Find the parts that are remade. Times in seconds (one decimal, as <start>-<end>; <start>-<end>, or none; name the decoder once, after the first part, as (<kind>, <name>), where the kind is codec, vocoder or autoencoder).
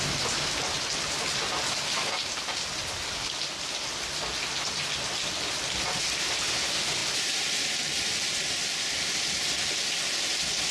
none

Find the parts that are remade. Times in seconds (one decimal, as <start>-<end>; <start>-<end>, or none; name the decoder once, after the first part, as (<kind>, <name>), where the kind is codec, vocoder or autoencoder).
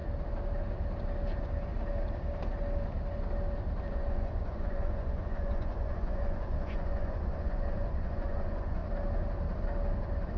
3.9-8.8 (vocoder, Vocos)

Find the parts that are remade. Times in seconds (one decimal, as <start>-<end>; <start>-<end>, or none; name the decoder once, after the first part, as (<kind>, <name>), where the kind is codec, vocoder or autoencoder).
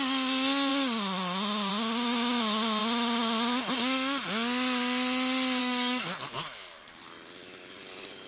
5.6-7.0 (codec, DAC)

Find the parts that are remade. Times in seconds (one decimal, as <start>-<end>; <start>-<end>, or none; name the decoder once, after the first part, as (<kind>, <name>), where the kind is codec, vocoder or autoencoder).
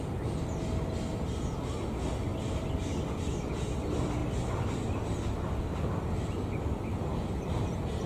2.3-3.2 (vocoder, BigVGAN v2)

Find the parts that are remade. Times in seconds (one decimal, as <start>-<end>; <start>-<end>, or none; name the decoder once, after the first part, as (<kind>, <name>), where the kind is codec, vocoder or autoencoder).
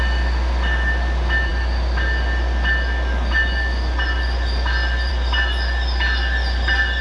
none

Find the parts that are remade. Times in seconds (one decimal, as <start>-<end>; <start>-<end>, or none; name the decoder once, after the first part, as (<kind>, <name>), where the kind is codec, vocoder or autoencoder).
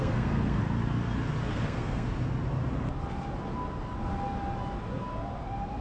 0.0-0.6 (codec, SNAC); 1.5-2.1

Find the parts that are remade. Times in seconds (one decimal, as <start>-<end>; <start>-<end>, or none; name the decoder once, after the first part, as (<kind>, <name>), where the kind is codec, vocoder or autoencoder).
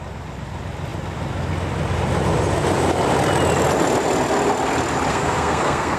5.1-6.0 (codec, SNAC)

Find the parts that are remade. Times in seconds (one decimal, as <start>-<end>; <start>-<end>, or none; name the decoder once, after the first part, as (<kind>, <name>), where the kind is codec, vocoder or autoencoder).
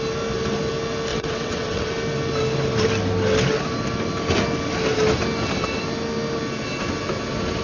1.1-1.9 (vocoder, WaveNeXt)